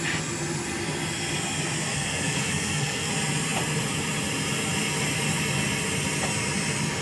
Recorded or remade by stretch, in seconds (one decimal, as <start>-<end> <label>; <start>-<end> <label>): 0.0-1.9 recorded; 1.9-3.1 remade; 3.1-7.0 recorded